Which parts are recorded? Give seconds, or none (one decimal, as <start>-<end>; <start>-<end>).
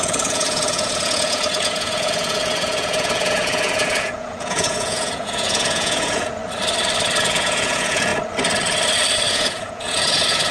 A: 6.4-7.2; 8.1-9.3